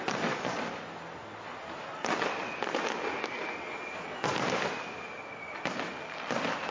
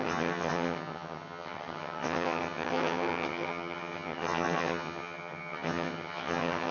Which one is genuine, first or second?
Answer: first